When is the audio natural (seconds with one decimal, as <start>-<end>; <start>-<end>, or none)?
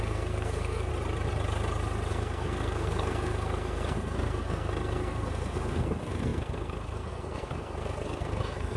0.9-2.1